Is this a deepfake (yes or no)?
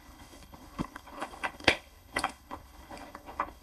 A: yes